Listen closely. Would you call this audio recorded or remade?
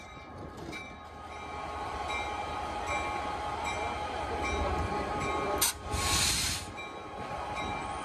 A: recorded